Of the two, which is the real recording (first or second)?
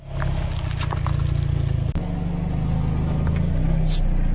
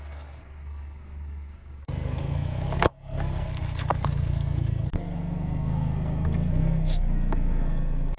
first